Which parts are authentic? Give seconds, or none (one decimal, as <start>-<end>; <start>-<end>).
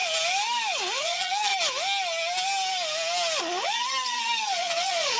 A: 0.0-1.0; 1.5-3.4